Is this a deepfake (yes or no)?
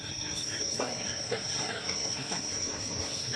yes